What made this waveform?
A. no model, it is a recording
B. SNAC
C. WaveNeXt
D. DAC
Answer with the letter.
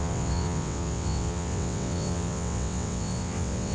C